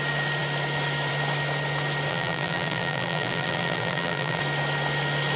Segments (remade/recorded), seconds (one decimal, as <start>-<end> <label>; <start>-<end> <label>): 0.0-2.1 recorded; 2.1-4.4 remade; 4.4-5.4 recorded